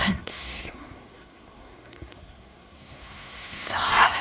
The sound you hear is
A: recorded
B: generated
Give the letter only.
B